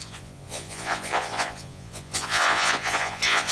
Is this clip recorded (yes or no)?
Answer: no